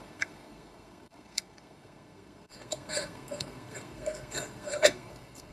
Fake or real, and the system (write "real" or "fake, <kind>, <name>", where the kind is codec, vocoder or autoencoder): fake, codec, SNAC